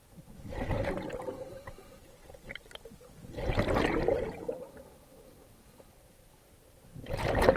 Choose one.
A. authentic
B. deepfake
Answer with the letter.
A